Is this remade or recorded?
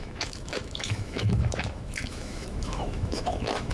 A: remade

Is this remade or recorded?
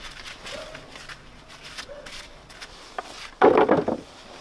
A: recorded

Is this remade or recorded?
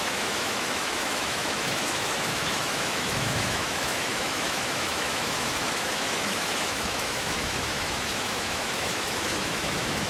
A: remade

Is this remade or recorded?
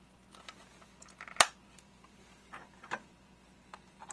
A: remade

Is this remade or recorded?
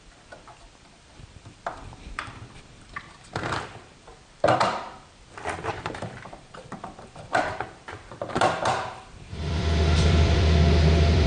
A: remade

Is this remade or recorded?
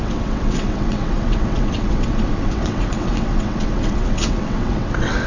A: remade